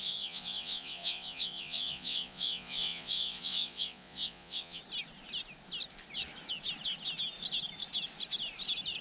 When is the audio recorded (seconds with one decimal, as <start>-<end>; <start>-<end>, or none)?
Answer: 4.8-9.0